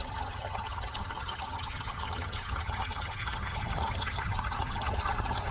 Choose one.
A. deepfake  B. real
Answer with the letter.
A